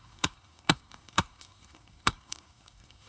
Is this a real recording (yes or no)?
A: no